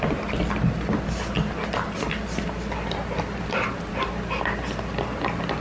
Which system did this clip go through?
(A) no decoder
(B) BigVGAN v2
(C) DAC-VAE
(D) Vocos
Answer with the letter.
A